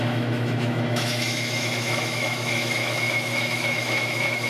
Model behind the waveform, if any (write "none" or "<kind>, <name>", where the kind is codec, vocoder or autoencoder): autoencoder, DAC-VAE